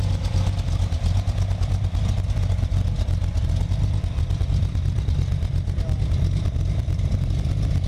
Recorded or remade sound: recorded